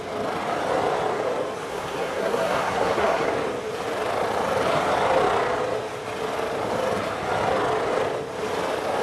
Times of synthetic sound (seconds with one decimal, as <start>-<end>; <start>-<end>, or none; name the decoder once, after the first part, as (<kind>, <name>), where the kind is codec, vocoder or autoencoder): 1.7-3.3 (codec, SNAC)